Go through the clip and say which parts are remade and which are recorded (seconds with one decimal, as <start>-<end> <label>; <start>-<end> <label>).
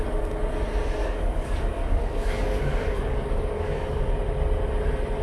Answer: 0.0-1.0 recorded; 1.0-4.0 remade; 4.0-5.2 recorded